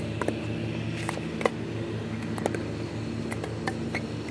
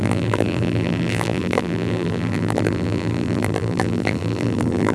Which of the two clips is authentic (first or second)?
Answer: first